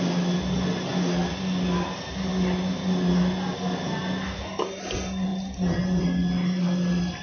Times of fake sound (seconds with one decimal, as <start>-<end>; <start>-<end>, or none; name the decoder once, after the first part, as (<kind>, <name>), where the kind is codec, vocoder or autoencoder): none

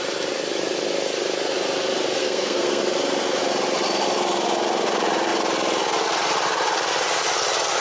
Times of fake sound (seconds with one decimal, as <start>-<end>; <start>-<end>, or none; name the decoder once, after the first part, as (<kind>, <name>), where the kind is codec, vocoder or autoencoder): 2.2-2.8 (codec, SNAC)